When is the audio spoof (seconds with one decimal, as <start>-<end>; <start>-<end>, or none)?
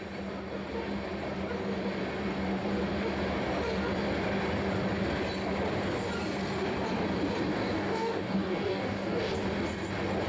7.5-9.3